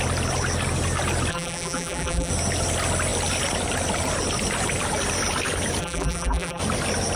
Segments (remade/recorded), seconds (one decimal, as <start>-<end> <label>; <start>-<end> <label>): 0.0-1.3 recorded; 1.3-2.3 remade; 2.3-5.8 recorded; 5.8-6.6 remade; 6.6-7.2 recorded